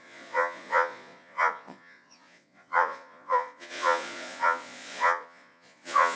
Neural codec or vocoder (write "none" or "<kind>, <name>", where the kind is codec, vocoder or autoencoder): vocoder, Vocos